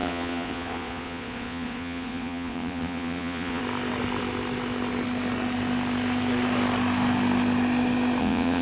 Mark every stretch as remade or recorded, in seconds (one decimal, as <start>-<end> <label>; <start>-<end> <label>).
0.0-3.6 remade; 3.6-8.2 recorded; 8.2-8.6 remade